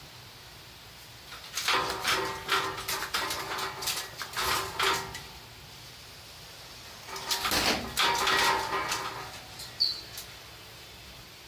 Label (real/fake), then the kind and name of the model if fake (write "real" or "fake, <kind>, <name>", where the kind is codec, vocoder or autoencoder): real